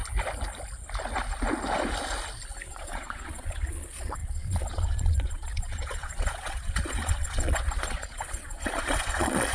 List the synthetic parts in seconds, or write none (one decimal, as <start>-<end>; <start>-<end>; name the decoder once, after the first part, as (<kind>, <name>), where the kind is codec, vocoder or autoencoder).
2.7-9.5 (vocoder, Vocos)